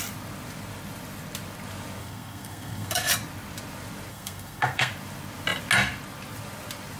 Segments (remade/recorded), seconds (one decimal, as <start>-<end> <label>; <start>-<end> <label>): 0.0-2.0 recorded; 2.0-3.1 remade; 3.1-4.1 recorded; 4.1-4.9 remade; 4.9-7.0 recorded